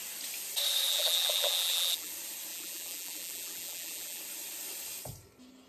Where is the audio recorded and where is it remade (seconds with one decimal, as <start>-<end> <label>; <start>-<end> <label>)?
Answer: 0.0-0.9 recorded; 0.9-2.1 remade; 2.1-2.5 recorded; 2.5-4.2 remade; 4.2-5.7 recorded